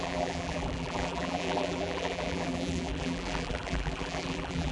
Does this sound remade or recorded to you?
remade